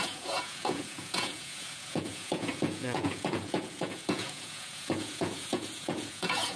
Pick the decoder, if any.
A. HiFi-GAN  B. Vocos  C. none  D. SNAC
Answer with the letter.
B